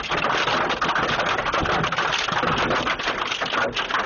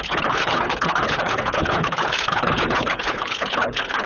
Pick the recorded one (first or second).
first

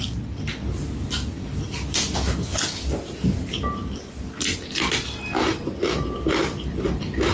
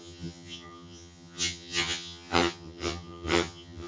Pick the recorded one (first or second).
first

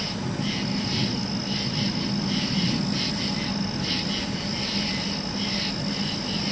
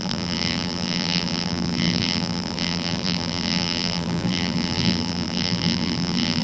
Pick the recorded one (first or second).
first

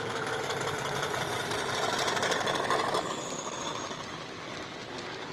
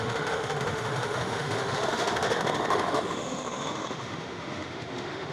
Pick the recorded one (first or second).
first